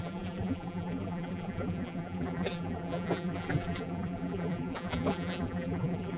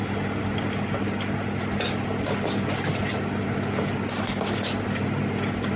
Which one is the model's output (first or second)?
first